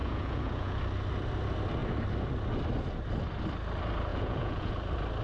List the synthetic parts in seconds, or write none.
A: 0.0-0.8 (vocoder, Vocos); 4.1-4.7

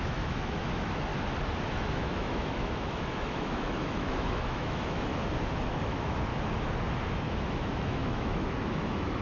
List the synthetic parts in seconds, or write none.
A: 0.0-1.1 (autoencoder, DAC-VAE); 1.7-5.1; 5.6-6.3; 7.1-9.2

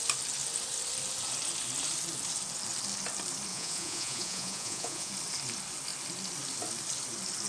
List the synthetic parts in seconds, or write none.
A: 3.5-5.1 (vocoder, Vocos)